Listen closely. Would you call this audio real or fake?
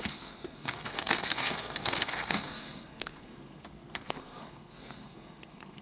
fake